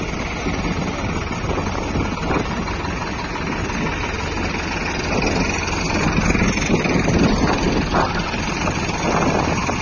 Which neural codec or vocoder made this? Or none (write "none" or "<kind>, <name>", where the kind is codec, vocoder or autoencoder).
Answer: none